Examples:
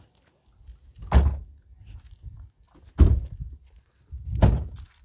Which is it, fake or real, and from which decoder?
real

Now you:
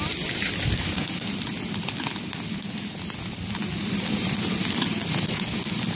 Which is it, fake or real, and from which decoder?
real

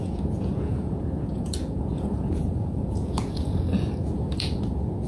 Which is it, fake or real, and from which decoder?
fake, vocoder, Vocos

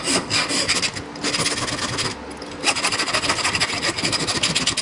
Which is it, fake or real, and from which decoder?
real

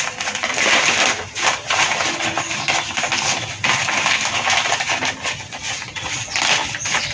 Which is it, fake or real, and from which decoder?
real